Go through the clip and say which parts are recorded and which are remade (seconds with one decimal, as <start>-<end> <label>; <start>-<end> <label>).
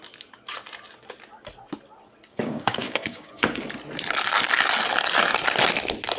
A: 0.0-2.3 recorded; 2.3-3.6 remade; 3.6-6.2 recorded